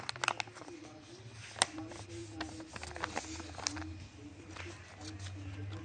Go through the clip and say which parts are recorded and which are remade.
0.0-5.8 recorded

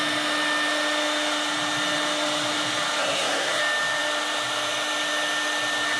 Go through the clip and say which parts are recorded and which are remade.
0.0-3.0 recorded; 3.0-3.6 remade; 3.6-6.0 recorded